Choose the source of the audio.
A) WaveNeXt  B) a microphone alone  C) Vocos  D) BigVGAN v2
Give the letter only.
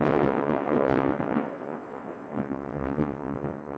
A